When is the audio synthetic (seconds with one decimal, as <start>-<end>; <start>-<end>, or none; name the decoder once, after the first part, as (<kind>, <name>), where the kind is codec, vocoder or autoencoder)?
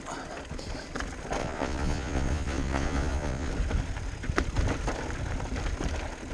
1.4-3.5 (vocoder, Vocos)